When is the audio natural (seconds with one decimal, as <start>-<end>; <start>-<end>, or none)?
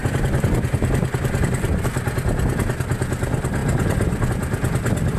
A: 0.0-5.2